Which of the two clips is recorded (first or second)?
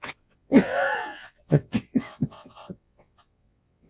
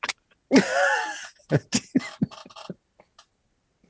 second